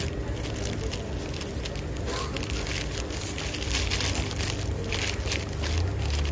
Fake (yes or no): no